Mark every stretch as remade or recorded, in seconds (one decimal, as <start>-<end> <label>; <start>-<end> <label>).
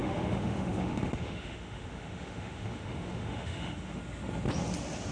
0.0-4.0 remade; 4.0-5.1 recorded